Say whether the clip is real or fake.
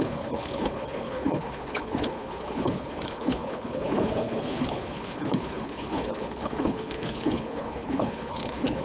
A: fake